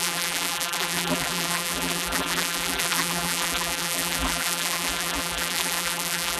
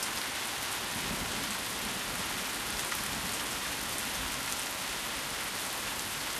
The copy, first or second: first